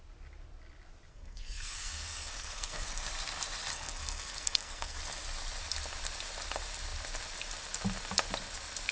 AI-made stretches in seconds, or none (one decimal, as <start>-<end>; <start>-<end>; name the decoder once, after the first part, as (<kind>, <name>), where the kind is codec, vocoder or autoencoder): 1.1-3.1 (codec, SNAC); 3.7-5.0